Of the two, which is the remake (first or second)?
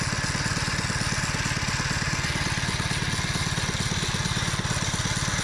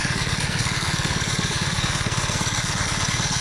second